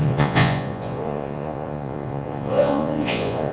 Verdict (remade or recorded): remade